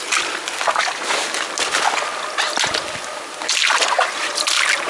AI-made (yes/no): no